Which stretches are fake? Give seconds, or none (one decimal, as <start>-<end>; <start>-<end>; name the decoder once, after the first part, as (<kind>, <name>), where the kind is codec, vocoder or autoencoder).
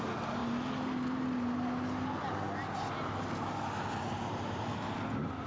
none